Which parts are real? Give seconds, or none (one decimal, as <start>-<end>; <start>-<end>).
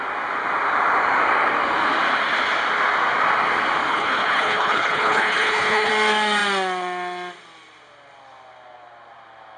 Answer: 0.0-3.9; 5.9-9.6